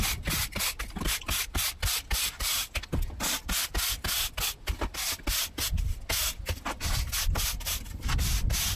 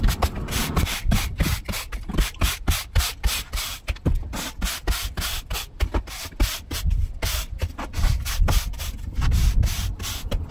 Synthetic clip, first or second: second